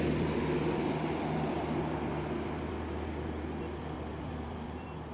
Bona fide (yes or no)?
yes